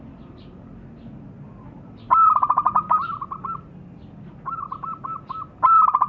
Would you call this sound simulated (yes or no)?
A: no